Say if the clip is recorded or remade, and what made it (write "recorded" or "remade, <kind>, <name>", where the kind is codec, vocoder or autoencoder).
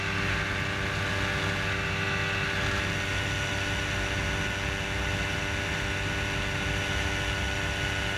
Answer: recorded